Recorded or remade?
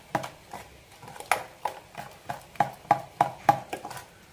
recorded